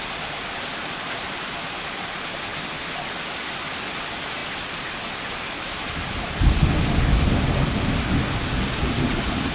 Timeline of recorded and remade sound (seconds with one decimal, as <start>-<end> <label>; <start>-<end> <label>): 0.0-2.5 recorded; 2.5-3.1 remade; 3.1-4.4 recorded; 4.4-7.8 remade; 7.8-9.5 recorded